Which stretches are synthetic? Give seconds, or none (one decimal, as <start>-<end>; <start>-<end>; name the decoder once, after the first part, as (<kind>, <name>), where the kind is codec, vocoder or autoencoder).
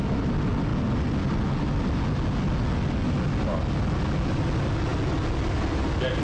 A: none